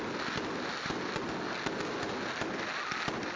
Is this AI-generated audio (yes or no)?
no